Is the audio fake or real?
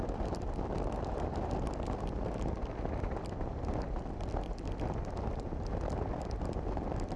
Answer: real